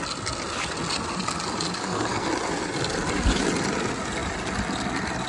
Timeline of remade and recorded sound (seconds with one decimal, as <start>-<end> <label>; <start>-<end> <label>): 0.0-1.8 recorded; 1.8-2.3 remade; 2.3-5.3 recorded

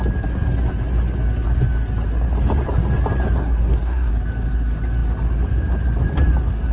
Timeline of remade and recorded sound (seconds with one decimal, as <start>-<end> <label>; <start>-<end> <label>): 0.0-3.4 recorded; 3.4-4.1 remade; 4.1-6.7 recorded

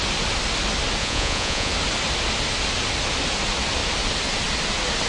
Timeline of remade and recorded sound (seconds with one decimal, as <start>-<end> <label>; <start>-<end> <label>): 0.0-1.0 recorded; 1.0-1.7 remade; 1.7-5.1 recorded

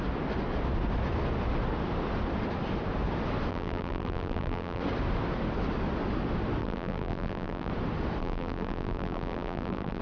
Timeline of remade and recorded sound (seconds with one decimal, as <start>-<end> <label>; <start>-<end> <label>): 0.0-3.5 recorded; 3.5-4.8 remade; 4.8-6.6 recorded; 6.6-7.7 remade; 7.7-8.2 recorded; 8.2-10.0 remade

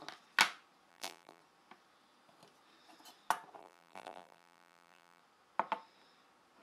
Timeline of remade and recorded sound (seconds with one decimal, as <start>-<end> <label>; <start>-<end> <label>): 0.0-0.9 recorded; 0.9-1.4 remade; 1.4-3.6 recorded; 3.6-5.2 remade; 5.2-6.6 recorded

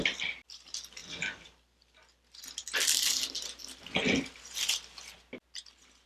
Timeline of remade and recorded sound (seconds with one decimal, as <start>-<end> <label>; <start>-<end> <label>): 0.0-6.1 recorded

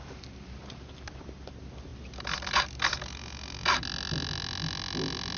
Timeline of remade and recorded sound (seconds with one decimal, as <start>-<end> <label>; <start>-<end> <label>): 0.0-5.4 recorded